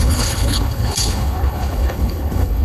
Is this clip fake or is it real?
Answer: fake